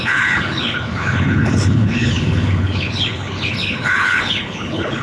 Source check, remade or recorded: remade